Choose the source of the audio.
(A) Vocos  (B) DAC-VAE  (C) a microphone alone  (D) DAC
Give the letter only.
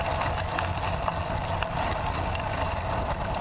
C